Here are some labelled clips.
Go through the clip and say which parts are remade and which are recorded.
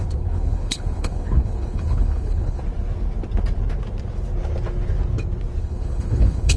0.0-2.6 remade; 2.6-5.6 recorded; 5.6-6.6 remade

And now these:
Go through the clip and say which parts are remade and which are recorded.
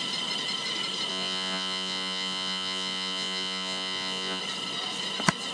0.0-1.1 recorded; 1.1-4.4 remade; 4.4-5.5 recorded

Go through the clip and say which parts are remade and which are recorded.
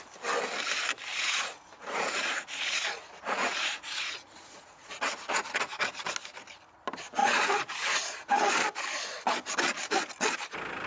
0.0-1.1 recorded; 1.1-5.9 remade; 5.9-7.2 recorded; 7.2-8.0 remade; 8.0-10.9 recorded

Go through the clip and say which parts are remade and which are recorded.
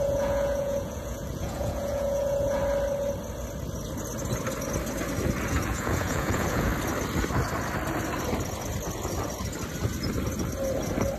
0.0-2.6 remade; 2.6-5.5 recorded; 5.5-6.7 remade; 6.7-11.2 recorded